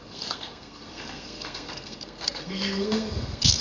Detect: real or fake fake